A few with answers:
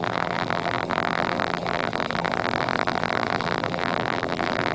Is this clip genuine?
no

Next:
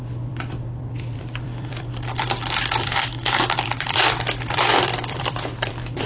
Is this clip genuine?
no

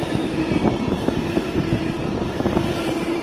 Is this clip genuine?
no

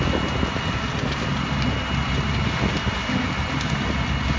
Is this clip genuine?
yes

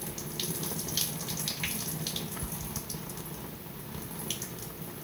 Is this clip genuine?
yes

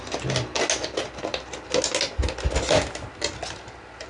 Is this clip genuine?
yes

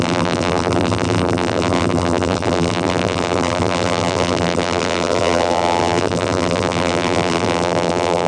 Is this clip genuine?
no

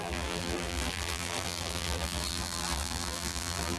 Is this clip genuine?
no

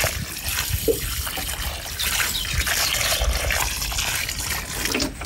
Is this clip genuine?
yes